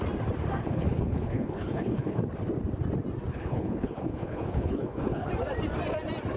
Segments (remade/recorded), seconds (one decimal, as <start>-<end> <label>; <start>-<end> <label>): 0.0-0.6 recorded; 0.6-2.2 remade; 2.2-3.3 recorded; 3.3-5.3 remade; 5.3-6.4 recorded